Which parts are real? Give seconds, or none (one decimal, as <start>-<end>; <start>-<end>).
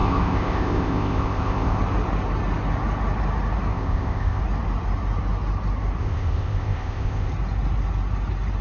1.8-3.7; 4.4-6.0; 7.3-8.6